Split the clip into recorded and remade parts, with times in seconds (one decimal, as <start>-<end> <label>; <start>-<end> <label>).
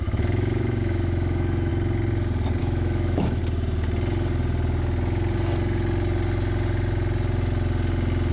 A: 0.0-1.7 remade; 1.7-2.6 recorded; 2.6-3.4 remade; 3.4-8.3 recorded